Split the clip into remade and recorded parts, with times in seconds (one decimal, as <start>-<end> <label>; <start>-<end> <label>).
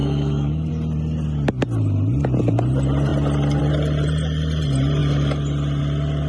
0.0-0.7 remade; 0.7-6.3 recorded